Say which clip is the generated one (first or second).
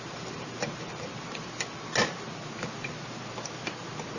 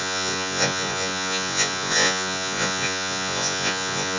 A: second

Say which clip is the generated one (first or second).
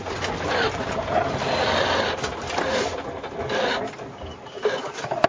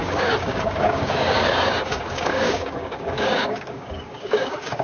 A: second